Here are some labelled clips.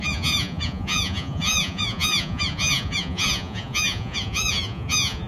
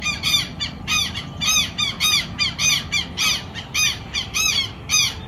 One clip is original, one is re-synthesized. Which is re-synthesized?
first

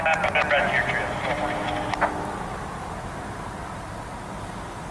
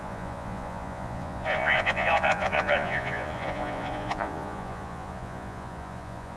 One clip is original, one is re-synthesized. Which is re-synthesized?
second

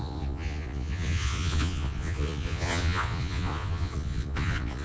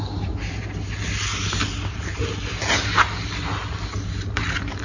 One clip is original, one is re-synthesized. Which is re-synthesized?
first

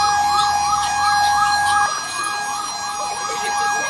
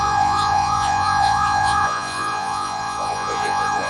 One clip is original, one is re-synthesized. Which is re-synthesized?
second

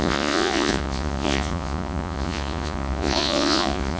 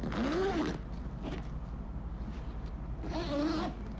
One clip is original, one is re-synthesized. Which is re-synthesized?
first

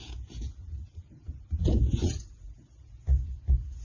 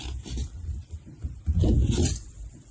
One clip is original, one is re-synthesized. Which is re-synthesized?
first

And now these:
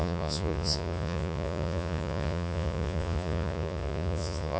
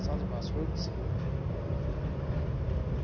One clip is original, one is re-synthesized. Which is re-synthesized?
first